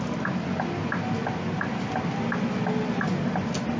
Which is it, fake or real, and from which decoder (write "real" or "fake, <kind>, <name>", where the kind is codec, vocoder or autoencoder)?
real